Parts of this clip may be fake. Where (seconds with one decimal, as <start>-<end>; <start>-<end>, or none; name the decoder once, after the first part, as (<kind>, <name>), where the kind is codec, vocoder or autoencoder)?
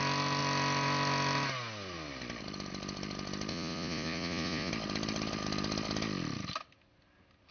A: 3.5-4.7 (vocoder, Vocos)